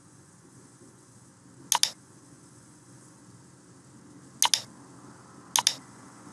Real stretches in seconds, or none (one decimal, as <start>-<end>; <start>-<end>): 1.3-1.9; 3.2-5.8